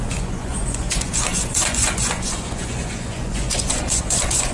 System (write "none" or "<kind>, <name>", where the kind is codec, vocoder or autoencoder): vocoder, Vocos